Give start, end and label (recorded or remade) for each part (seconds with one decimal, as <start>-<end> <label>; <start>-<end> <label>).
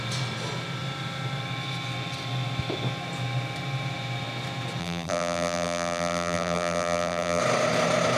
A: 0.0-4.8 recorded; 4.8-7.4 remade; 7.4-8.2 recorded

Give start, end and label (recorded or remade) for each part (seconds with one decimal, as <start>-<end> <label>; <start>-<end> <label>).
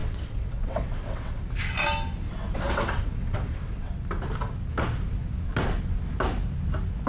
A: 0.0-1.4 remade; 1.4-2.4 recorded; 2.4-3.9 remade; 3.9-7.1 recorded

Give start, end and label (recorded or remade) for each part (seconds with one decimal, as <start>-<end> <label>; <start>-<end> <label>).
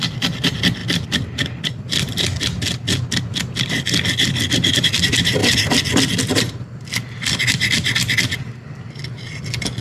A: 0.0-9.8 recorded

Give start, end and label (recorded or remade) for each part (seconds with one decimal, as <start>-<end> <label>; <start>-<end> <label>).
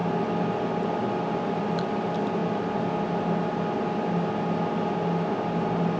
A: 0.0-6.0 recorded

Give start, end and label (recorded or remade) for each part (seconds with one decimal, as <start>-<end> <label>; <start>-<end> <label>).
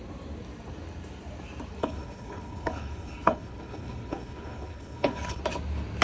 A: 0.0-1.8 recorded; 1.8-5.4 remade; 5.4-6.0 recorded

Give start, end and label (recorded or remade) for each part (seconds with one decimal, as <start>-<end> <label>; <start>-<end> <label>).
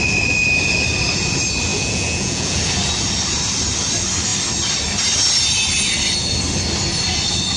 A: 0.0-1.7 recorded; 1.7-2.6 remade; 2.6-7.6 recorded